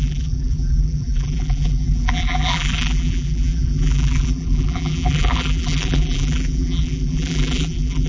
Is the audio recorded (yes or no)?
no